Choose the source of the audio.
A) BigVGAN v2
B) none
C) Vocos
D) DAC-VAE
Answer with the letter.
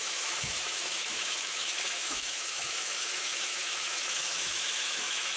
D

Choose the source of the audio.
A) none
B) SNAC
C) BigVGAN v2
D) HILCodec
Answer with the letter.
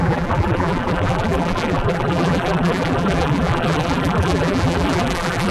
C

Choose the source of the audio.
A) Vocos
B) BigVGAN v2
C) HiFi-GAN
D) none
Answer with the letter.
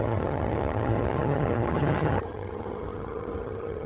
C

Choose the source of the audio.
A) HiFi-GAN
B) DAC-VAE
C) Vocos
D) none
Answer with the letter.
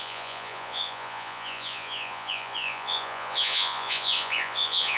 C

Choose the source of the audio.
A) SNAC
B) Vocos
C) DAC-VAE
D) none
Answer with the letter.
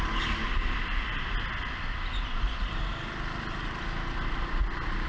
D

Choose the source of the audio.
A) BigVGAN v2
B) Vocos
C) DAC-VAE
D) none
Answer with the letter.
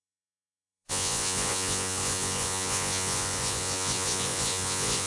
B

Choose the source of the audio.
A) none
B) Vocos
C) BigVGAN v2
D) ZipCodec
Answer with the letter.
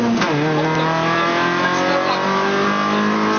A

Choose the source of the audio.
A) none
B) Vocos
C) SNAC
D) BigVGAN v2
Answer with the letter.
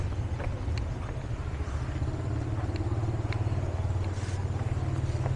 A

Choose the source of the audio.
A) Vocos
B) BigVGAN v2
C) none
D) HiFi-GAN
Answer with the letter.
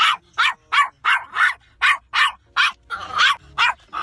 C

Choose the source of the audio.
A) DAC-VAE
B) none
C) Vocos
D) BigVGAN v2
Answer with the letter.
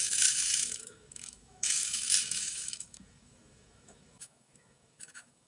A